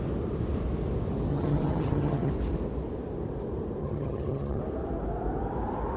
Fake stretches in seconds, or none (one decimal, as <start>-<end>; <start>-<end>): 1.3-2.3; 3.8-4.6